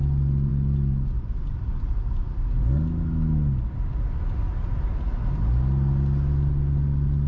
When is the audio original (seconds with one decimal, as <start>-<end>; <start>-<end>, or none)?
0.0-7.3